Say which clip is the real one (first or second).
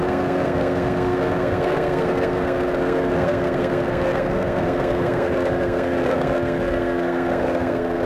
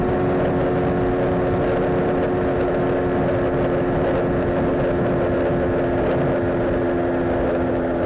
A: second